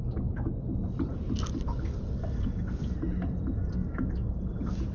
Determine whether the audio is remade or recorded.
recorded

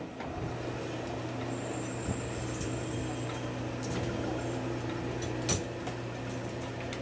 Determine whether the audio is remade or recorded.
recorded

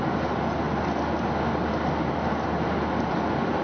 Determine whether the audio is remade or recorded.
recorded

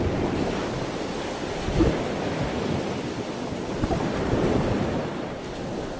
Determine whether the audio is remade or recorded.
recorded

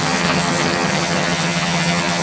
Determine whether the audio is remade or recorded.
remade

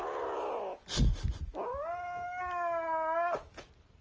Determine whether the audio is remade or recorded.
recorded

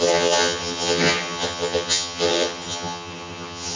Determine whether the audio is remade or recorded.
remade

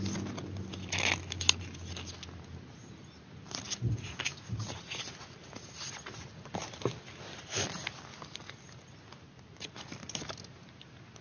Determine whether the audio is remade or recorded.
recorded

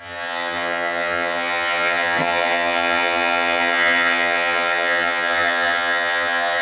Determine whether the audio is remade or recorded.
remade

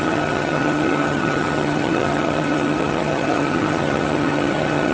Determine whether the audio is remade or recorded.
remade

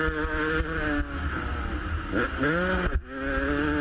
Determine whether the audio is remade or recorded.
recorded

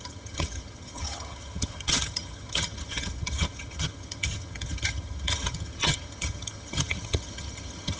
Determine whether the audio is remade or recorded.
remade